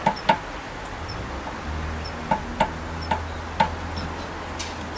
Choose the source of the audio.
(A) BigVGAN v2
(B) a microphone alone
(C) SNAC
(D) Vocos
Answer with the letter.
B